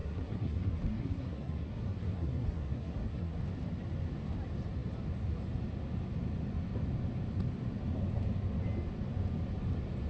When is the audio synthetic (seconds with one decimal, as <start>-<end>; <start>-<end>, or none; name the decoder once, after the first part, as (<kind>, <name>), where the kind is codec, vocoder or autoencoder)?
0.0-3.4 (codec, SNAC)